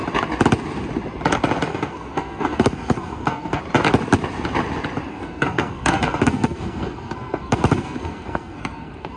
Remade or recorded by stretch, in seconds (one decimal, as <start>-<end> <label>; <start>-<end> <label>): 0.0-1.7 recorded; 1.7-3.6 remade; 3.6-5.1 recorded; 5.1-9.2 remade